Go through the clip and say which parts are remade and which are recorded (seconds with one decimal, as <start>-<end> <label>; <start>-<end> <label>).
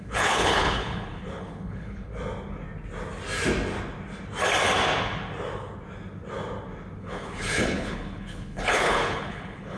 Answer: 0.0-2.1 remade; 2.1-7.0 recorded; 7.0-9.8 remade